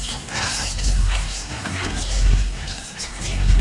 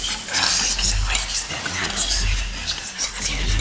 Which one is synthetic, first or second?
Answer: first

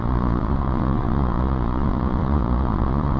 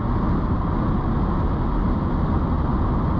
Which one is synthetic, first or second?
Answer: first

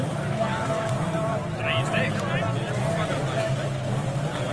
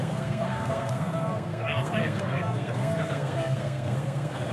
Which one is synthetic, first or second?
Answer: second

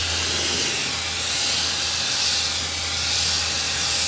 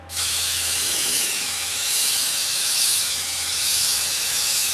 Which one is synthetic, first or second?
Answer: second